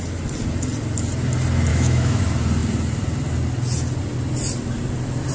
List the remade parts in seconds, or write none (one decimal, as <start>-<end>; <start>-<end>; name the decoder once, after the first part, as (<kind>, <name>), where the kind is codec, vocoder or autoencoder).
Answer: 1.7-2.2 (autoencoder, DAC-VAE)